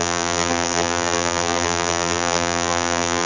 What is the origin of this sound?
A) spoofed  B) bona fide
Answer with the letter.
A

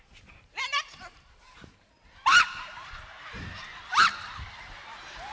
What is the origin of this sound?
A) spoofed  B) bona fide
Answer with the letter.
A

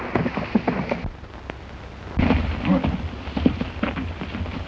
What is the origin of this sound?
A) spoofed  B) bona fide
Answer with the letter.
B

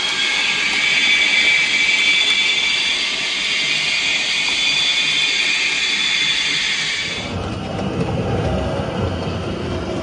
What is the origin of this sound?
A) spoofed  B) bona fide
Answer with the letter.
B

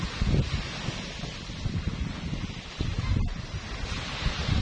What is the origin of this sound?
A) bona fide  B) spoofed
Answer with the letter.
A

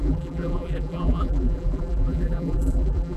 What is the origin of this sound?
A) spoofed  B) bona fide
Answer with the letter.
A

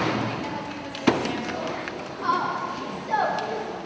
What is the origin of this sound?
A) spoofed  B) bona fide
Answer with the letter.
B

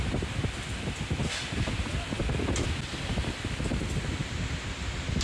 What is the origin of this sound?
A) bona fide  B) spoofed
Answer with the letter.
A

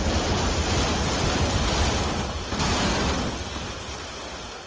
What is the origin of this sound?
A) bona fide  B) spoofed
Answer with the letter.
A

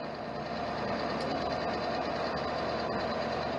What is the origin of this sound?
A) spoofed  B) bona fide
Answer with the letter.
B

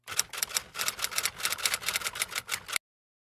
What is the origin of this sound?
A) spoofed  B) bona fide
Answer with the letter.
B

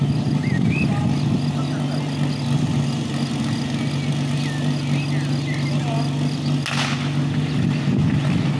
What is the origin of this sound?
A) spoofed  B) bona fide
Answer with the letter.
B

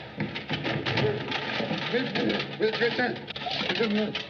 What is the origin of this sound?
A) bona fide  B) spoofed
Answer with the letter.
A